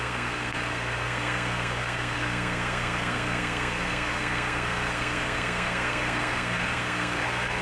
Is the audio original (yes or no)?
no